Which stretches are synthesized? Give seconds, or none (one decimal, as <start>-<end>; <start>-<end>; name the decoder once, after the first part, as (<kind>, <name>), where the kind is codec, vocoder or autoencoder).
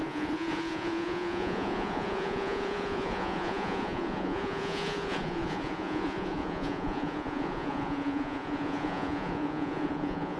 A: 0.0-10.4 (vocoder, Vocos)